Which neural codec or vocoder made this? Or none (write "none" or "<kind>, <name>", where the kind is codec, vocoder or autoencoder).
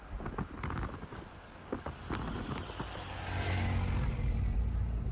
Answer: none